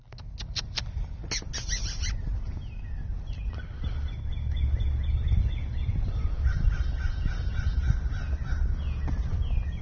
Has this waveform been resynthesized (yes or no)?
no